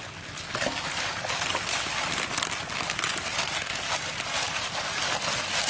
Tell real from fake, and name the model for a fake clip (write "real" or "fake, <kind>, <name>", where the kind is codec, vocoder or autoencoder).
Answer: real